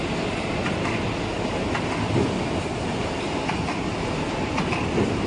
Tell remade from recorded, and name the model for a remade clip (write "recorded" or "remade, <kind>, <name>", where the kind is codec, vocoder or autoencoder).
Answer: recorded